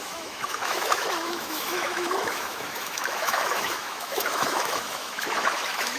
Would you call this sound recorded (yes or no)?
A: no